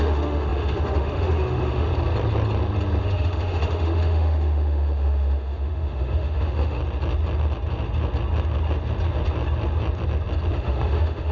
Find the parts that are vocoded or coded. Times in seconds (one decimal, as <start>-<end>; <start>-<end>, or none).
0.0-1.9; 3.0-6.8; 10.5-11.3